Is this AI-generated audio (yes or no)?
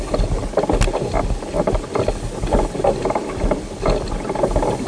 no